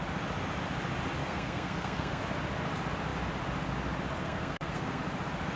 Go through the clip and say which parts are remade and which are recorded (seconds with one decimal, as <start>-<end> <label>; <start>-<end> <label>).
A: 0.0-1.2 recorded; 1.2-2.2 remade; 2.2-4.2 recorded; 4.2-5.0 remade; 5.0-5.6 recorded